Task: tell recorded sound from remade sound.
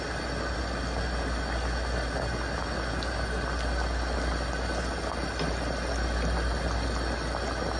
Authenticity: recorded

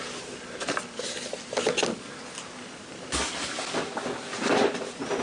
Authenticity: recorded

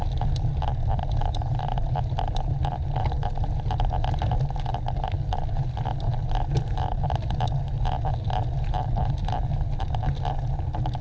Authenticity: recorded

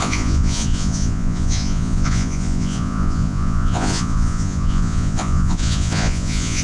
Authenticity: remade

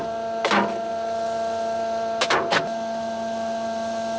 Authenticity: recorded